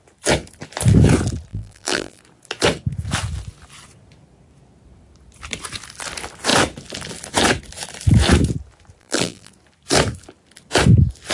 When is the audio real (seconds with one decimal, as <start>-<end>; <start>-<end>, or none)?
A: 0.0-1.5; 2.2-9.0; 9.5-11.3